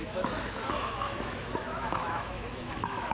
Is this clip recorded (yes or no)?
no